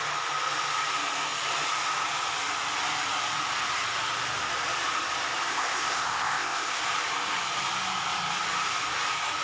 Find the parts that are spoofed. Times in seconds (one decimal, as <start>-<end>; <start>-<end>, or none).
5.5-6.8